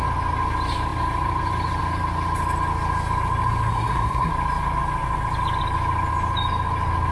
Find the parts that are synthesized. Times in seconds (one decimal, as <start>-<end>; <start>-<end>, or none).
3.7-4.3